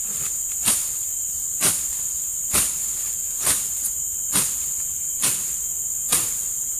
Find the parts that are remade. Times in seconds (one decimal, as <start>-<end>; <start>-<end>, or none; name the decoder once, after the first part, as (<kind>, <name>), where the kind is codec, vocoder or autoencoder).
none